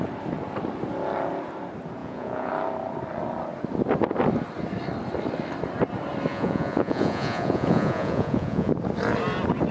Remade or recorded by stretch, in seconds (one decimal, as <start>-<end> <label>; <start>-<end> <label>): 0.0-2.0 recorded; 2.0-2.5 remade; 2.5-6.3 recorded; 6.3-8.7 remade; 8.7-9.7 recorded